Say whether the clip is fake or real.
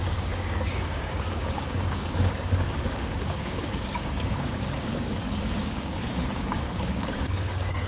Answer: fake